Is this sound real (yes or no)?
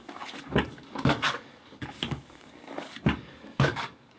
no